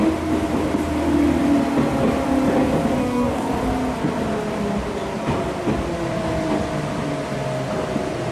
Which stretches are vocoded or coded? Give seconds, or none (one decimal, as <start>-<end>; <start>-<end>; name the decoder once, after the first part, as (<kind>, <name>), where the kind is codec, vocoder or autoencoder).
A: 3.0-3.5 (codec, DAC)